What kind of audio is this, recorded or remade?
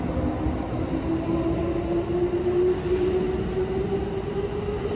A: recorded